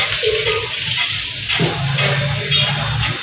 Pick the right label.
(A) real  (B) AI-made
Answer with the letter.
A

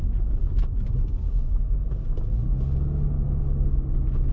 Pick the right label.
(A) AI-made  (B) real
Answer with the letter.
B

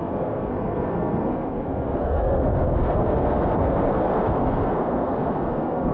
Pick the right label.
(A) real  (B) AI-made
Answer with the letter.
B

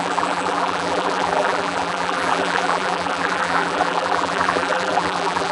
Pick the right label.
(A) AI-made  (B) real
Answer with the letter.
A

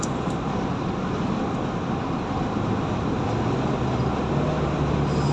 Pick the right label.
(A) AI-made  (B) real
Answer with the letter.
B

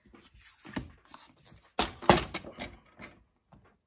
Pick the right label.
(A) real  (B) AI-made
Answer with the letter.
A